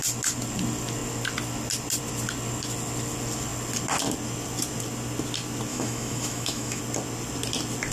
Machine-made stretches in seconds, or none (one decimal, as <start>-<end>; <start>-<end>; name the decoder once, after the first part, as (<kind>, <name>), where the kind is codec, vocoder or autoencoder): 5.7-6.8 (autoencoder, DAC-VAE)

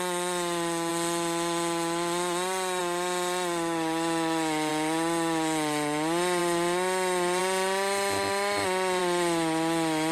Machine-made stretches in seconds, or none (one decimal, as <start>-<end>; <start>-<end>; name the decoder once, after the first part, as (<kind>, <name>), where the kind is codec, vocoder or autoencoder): none

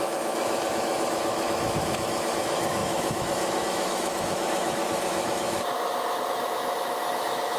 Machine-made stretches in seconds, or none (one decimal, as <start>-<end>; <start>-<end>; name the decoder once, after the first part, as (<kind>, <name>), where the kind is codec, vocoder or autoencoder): 0.0-7.6 (autoencoder, DAC-VAE)

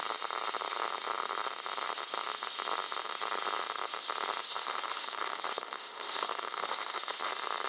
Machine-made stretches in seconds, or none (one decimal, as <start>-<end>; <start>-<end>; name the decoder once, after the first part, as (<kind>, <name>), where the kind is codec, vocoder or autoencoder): 4.5-7.3 (autoencoder, DAC-VAE)

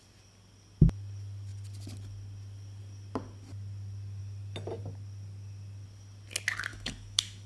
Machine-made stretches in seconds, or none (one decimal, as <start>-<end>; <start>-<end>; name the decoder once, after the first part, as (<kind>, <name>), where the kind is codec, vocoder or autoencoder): 6.7-7.5 (autoencoder, DAC-VAE)

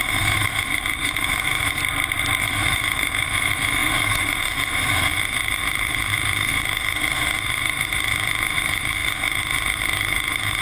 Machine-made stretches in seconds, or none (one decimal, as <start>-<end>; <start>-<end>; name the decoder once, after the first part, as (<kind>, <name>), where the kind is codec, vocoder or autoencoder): 0.0-1.8 (autoencoder, DAC-VAE); 2.4-10.6